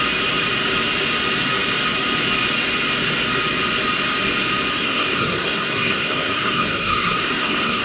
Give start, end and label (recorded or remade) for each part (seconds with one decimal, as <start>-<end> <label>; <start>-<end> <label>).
0.0-4.7 recorded; 4.7-7.8 remade